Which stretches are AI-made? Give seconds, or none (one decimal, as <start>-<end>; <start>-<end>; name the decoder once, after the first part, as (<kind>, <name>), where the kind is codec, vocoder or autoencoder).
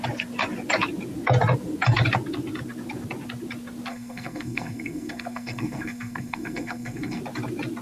3.9-7.2 (codec, SNAC)